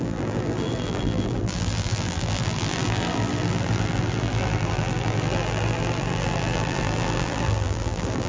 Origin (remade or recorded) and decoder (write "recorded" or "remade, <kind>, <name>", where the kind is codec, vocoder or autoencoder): remade, vocoder, BigVGAN v2